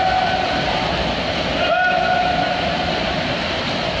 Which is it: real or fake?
real